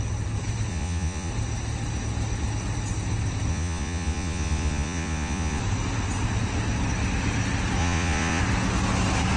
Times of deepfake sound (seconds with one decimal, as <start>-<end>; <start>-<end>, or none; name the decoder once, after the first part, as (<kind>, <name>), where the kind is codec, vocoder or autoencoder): 0.7-1.3 (vocoder, Vocos); 3.5-5.6; 7.8-8.4